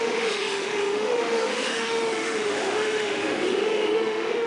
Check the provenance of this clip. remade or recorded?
remade